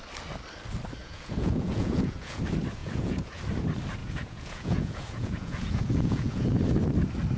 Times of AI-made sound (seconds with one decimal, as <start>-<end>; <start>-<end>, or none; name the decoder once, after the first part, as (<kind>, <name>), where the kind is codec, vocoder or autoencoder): 1.0-2.4 (vocoder, Vocos); 2.8-3.4; 4.0-6.5